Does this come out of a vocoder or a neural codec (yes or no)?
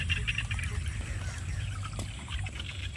no